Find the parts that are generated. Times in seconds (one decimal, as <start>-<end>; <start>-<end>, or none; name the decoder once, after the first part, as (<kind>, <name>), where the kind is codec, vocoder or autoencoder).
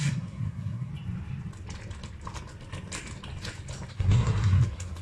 0.0-0.9 (codec, SNAC); 3.9-5.0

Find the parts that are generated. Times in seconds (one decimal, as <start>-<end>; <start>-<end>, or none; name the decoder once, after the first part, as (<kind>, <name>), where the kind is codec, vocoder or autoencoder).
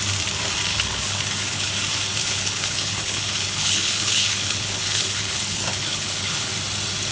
0.7-1.7 (codec, HILCodec); 2.2-6.5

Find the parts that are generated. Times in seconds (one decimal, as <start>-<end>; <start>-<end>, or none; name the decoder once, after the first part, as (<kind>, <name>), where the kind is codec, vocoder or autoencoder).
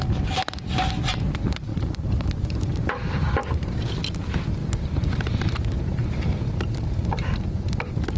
1.7-3.9 (vocoder, BigVGAN v2); 4.6-6.7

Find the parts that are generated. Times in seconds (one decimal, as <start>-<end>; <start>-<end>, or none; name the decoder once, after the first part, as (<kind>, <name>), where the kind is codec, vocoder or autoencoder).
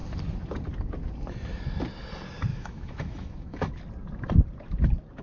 2.5-3.7 (autoencoder, DAC-VAE)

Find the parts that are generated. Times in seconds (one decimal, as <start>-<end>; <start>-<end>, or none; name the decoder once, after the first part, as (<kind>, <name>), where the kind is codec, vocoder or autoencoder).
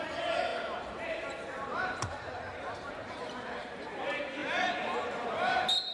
0.0-5.9 (vocoder, BigVGAN v2)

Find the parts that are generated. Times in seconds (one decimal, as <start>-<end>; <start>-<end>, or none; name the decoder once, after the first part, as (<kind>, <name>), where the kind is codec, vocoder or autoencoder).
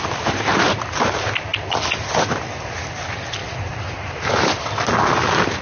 3.4-4.3 (vocoder, BigVGAN v2)